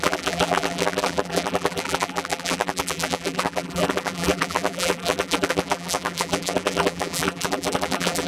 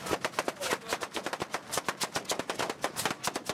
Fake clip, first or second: first